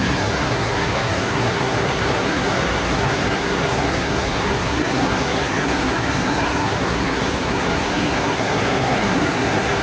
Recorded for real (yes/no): no